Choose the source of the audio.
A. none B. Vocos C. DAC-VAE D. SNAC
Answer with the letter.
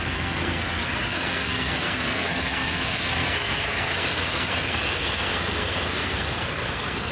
D